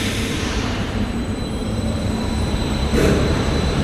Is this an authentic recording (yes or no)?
no